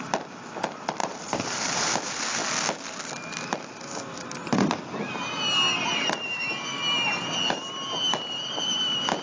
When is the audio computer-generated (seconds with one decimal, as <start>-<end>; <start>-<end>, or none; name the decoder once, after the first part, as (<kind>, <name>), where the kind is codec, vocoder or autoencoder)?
1.0-1.9 (vocoder, BigVGAN v2)